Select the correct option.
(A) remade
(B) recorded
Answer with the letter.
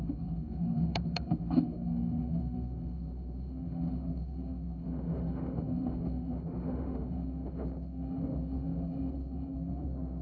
A